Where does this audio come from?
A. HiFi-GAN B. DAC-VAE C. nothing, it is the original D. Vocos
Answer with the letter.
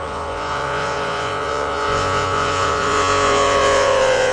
D